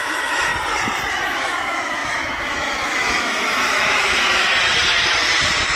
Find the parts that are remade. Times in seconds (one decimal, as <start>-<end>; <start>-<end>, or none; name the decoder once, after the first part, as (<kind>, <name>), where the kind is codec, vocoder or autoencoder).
0.0-0.5 (autoencoder, DAC-VAE); 1.1-4.5